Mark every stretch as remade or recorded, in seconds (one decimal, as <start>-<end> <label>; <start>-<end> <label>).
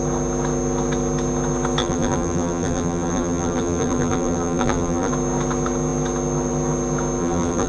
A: 0.0-1.8 recorded; 1.8-5.1 remade; 5.1-7.2 recorded; 7.2-7.7 remade